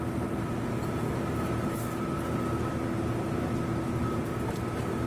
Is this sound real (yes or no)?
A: yes